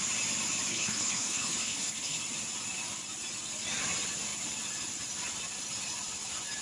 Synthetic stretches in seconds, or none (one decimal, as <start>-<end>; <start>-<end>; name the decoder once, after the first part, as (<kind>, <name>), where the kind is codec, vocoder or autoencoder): 0.7-2.2 (codec, HILCodec)